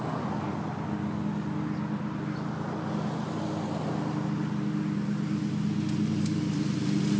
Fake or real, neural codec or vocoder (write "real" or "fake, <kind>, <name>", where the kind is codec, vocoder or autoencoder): real